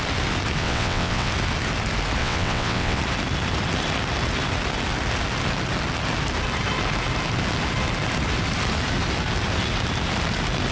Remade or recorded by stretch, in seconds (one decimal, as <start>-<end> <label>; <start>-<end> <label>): 0.0-0.6 recorded; 0.6-1.3 remade; 1.3-2.2 recorded; 2.2-3.0 remade; 3.0-10.7 recorded